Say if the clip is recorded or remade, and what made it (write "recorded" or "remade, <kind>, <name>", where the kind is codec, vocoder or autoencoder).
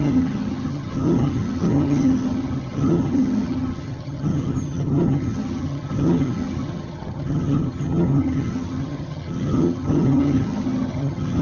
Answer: remade, vocoder, HiFi-GAN